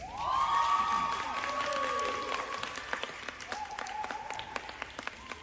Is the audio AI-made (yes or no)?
no